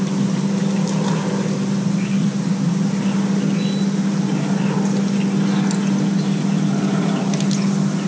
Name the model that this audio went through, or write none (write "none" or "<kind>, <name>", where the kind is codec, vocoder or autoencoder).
none